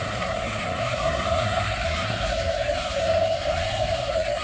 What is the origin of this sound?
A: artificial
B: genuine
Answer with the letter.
A